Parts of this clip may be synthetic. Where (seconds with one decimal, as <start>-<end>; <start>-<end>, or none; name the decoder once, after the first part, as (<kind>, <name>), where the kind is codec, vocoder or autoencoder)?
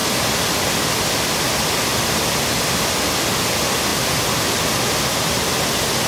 0.0-0.9 (vocoder, BigVGAN v2); 1.9-2.6